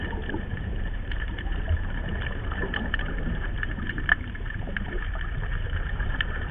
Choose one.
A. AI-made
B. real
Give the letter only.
A